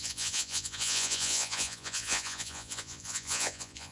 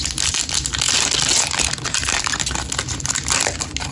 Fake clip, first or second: first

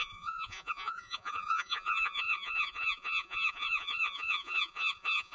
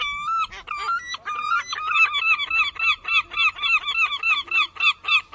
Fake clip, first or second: first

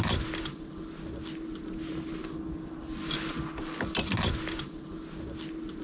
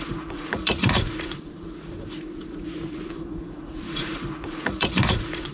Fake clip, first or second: second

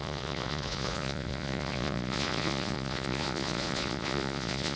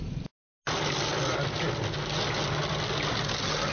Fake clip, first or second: first